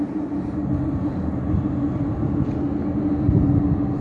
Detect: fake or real real